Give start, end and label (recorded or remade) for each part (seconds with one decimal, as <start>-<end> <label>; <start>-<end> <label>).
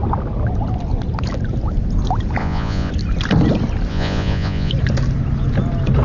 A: 0.0-2.4 recorded; 2.4-2.9 remade; 2.9-3.9 recorded; 3.9-4.7 remade; 4.7-6.0 recorded